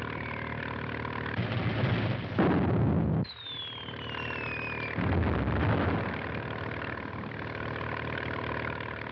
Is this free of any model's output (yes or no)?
yes